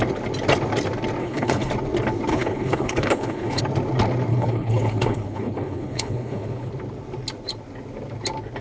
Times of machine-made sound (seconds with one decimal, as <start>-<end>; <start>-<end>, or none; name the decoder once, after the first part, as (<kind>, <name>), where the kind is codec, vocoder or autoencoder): 1.2-1.7 (codec, HILCodec); 2.3-3.6; 4.3-6.7